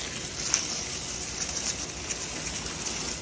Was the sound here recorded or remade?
recorded